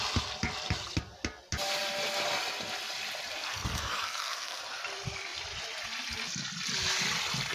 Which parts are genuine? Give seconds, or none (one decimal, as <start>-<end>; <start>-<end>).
0.0-3.4; 4.6-7.5